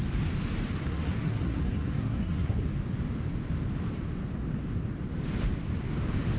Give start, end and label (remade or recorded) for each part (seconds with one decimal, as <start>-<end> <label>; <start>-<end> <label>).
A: 0.0-0.8 recorded; 0.8-2.6 remade; 2.6-6.4 recorded